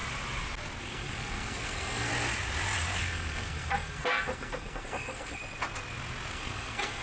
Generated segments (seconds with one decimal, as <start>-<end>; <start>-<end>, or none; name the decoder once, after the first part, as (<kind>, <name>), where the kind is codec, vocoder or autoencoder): 0.8-2.1 (codec, SNAC); 3.0-5.4; 6.3-7.0

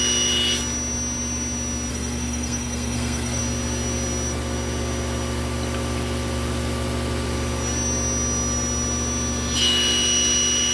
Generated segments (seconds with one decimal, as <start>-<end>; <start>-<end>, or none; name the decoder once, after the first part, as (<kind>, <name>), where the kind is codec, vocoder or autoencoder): 1.9-3.4 (codec, SNAC)